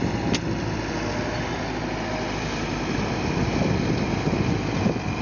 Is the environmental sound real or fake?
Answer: real